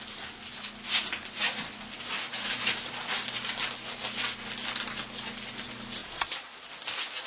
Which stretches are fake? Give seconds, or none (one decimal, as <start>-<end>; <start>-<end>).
6.0-6.6